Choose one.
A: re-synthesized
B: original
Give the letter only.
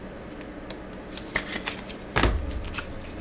B